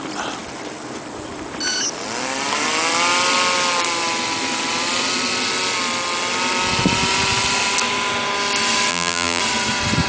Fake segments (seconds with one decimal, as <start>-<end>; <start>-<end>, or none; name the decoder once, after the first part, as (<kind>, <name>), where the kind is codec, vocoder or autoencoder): 8.9-9.4 (vocoder, BigVGAN v2)